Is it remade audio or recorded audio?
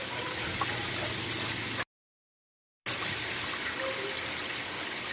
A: recorded